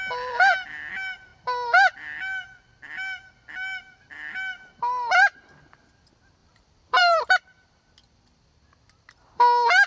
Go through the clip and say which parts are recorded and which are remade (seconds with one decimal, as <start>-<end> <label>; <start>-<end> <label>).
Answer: 0.0-6.4 recorded; 6.4-7.7 remade; 7.7-9.9 recorded